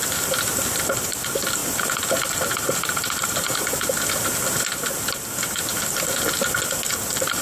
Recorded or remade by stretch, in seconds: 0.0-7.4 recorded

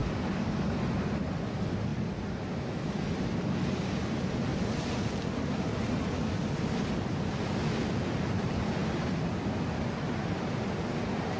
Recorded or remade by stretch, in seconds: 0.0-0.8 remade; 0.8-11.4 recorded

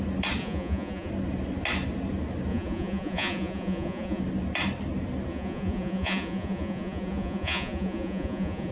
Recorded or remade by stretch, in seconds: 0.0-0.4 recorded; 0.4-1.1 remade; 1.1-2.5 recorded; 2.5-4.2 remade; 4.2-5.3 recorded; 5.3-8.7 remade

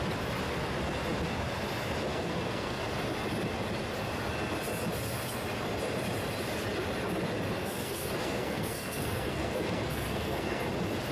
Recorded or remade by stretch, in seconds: 0.0-2.1 recorded; 2.1-2.8 remade; 2.8-7.6 recorded; 7.6-10.7 remade; 10.7-11.1 recorded

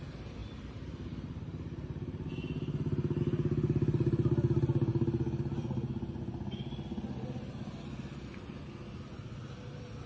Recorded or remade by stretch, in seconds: 0.0-10.1 recorded